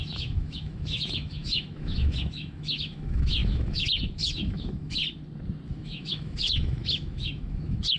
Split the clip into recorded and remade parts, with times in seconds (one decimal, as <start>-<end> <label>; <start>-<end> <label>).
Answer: 0.0-5.0 remade; 5.0-5.7 recorded; 5.7-8.0 remade